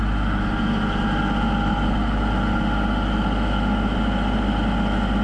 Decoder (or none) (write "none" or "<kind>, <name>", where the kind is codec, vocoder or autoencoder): none